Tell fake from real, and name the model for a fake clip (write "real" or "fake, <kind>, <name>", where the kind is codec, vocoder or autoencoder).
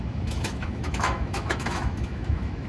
fake, autoencoder, DAC-VAE